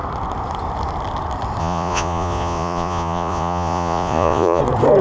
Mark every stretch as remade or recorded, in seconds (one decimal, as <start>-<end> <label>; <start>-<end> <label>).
0.0-1.6 recorded; 1.6-4.6 remade; 4.6-5.0 recorded